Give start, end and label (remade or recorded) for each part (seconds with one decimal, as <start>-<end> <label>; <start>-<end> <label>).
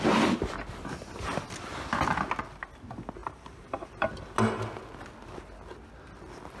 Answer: 0.0-3.2 recorded; 3.2-4.1 remade; 4.1-6.6 recorded